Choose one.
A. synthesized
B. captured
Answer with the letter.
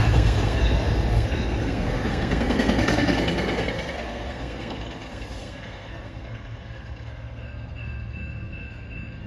A